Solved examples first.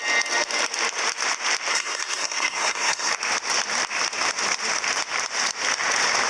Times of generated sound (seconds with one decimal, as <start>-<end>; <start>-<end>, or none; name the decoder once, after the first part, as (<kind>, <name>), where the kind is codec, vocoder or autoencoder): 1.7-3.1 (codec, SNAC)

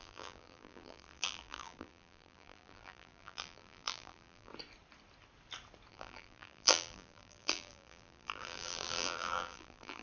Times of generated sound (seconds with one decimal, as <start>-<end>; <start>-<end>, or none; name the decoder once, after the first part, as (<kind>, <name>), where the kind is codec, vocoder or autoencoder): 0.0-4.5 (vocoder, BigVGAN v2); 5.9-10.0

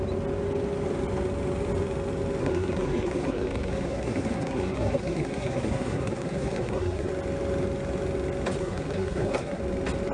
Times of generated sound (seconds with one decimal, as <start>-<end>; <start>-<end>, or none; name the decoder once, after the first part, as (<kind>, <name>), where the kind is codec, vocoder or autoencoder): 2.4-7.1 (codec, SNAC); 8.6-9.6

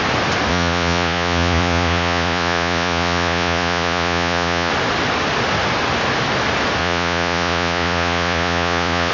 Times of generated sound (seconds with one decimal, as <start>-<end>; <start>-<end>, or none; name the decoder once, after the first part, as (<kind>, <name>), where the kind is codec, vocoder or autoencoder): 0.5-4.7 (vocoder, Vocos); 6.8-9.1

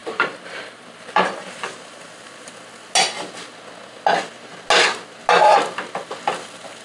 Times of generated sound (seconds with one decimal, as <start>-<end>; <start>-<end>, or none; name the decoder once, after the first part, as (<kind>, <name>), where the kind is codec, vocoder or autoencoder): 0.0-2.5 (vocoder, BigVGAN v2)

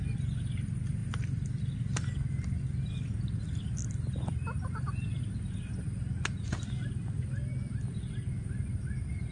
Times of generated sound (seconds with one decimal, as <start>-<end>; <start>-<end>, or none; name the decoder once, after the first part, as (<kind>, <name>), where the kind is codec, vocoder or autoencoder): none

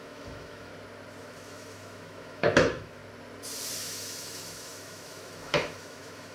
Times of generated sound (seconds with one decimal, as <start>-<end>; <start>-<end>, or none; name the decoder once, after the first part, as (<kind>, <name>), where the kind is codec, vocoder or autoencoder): 0.0-0.7 (autoencoder, DAC-VAE); 1.2-3.0; 3.8-6.3